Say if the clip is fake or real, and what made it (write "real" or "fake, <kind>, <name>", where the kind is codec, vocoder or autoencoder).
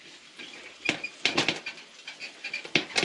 real